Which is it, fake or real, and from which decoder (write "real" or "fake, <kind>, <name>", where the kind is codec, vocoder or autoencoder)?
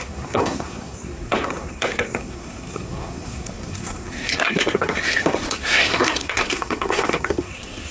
fake, codec, SNAC